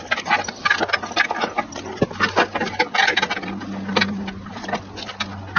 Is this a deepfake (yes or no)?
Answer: no